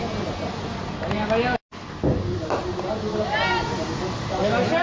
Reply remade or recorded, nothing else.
recorded